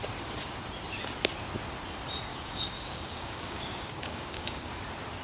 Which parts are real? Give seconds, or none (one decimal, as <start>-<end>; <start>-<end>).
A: 0.0-2.3; 4.8-5.2